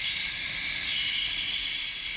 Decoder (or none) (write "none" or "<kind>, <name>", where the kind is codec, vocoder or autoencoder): none